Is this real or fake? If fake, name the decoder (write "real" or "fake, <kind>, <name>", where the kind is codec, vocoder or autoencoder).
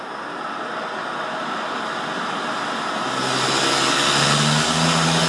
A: real